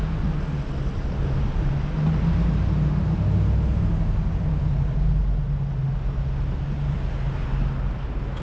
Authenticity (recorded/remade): recorded